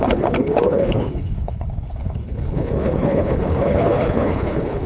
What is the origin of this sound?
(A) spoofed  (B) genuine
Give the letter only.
A